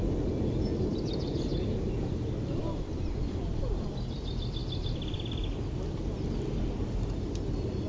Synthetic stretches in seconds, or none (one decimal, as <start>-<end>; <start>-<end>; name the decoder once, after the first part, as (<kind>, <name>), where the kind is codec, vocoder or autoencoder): none